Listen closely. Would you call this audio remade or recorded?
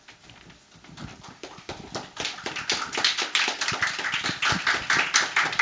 recorded